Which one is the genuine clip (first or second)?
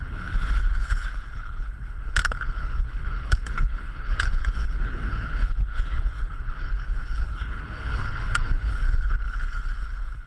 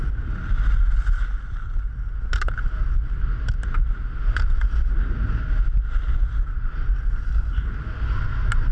second